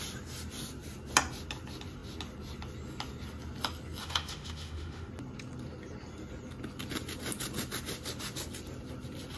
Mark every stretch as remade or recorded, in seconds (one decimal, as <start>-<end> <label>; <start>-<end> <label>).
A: 0.0-4.0 recorded; 4.0-5.1 remade; 5.1-9.4 recorded